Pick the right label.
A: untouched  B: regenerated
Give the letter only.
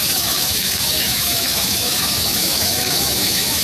B